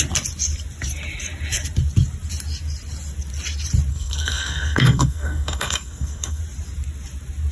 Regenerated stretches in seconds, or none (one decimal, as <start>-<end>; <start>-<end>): 3.9-6.4